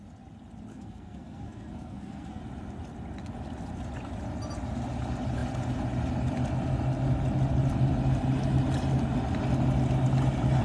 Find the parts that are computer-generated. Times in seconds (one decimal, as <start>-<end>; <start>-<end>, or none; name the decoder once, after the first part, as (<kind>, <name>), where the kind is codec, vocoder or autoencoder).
0.7-2.4 (codec, SNAC)